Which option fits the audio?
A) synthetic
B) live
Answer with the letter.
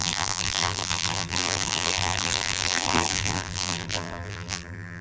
A